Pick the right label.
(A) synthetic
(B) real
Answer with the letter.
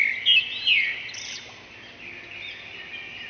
B